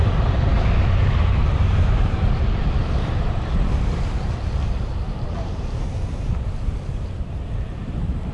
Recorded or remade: remade